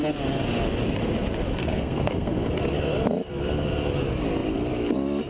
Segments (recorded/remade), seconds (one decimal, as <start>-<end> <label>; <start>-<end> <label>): 0.0-1.6 recorded; 1.6-2.3 remade; 2.3-5.3 recorded